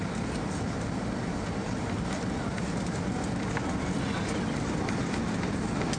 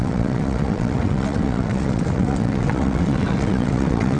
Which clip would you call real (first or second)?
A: first